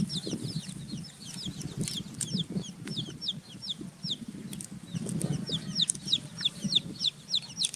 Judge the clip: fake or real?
real